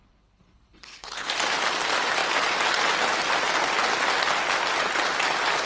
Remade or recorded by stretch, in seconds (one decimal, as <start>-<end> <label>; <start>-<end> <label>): 0.0-1.3 remade; 1.3-5.7 recorded